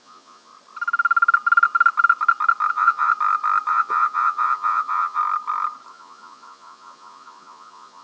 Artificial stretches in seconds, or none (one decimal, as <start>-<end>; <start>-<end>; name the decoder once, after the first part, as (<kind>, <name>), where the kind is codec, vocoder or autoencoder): 0.0-0.5 (vocoder, Vocos); 2.7-3.1; 3.7-5.2; 5.9-8.0